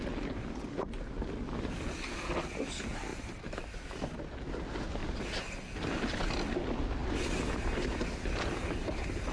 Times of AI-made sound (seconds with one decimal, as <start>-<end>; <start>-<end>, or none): 3.1-4.2; 5.0-5.5; 7.0-8.0